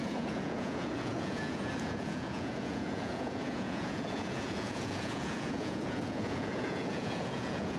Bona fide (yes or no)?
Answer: no